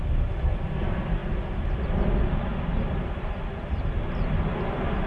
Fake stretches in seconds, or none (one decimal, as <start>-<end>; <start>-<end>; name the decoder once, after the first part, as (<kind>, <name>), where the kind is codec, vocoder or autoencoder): none